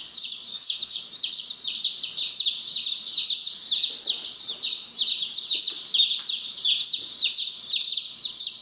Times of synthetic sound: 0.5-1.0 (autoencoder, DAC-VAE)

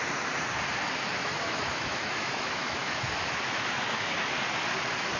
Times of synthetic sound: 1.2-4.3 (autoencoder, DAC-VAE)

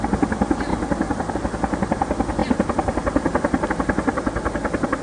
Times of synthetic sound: none

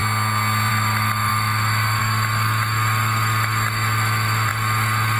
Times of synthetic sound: 0.7-5.2 (autoencoder, DAC-VAE)

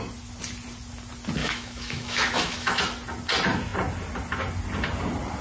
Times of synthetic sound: 1.4-2.8 (autoencoder, DAC-VAE)